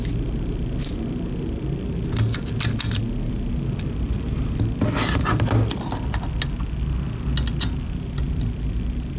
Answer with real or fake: real